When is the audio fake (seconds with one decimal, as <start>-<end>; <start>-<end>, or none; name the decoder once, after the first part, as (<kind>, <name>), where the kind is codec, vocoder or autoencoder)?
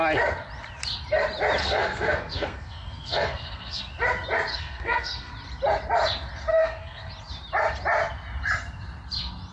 1.6-3.8 (codec, SNAC); 4.5-5.3; 6.5-7.1